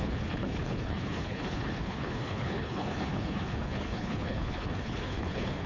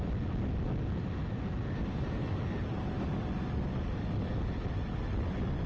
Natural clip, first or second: second